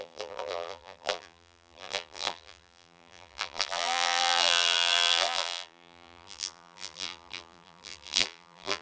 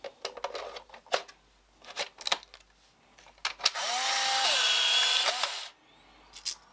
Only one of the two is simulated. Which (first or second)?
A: first